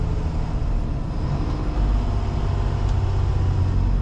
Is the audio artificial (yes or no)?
no